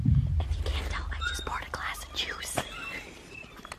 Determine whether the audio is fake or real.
real